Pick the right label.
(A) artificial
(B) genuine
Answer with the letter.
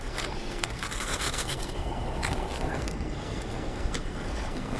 A